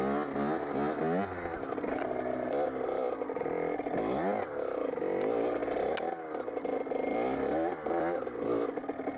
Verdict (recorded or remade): recorded